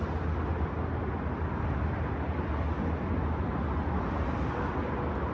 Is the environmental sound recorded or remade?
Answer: recorded